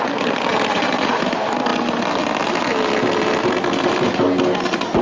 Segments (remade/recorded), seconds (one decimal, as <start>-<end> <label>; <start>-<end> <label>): 0.0-0.5 recorded; 0.5-1.1 remade; 1.1-5.0 recorded